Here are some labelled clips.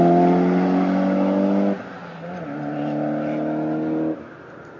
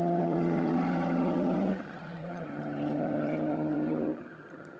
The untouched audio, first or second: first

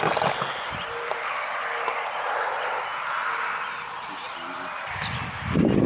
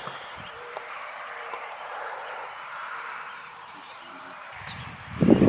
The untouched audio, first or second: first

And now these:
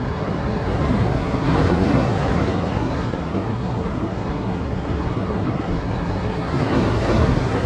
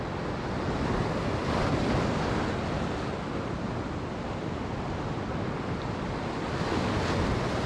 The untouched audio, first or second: second